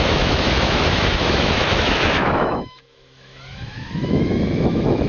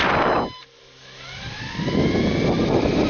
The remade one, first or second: first